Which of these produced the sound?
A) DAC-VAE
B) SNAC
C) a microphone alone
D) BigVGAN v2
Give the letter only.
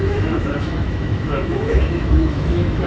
A